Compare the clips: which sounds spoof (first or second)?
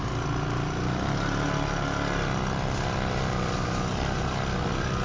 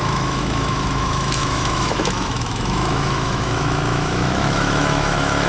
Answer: second